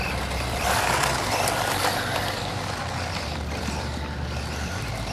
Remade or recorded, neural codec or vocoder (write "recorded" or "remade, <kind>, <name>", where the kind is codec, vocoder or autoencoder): remade, vocoder, BigVGAN v2